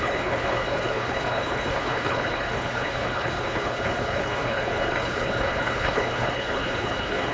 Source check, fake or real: fake